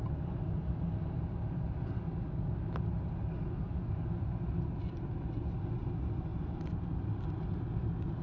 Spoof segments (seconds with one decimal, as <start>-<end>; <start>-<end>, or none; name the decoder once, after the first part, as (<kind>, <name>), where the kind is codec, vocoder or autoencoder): none